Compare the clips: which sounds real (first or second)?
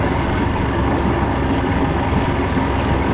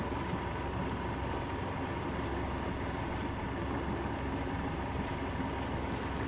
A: second